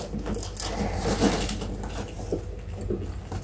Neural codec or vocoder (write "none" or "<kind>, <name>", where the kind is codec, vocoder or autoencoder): none